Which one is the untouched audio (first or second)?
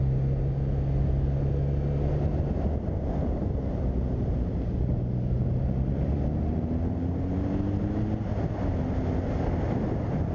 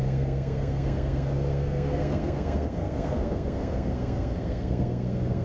first